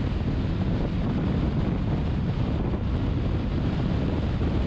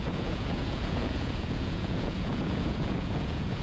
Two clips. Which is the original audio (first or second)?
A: first